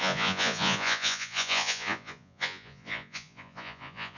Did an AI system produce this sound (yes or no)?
yes